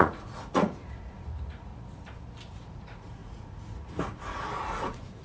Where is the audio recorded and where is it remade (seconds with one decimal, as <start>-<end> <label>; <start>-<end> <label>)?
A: 0.0-1.7 remade; 1.7-2.5 recorded; 2.5-5.2 remade